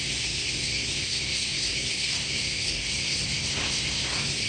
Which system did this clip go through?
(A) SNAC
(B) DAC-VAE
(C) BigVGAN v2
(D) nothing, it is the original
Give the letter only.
A